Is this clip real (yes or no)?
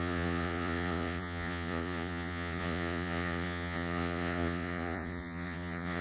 no